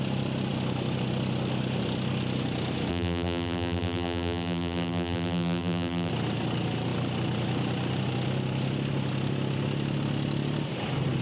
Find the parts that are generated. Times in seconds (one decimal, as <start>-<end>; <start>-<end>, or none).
2.9-6.1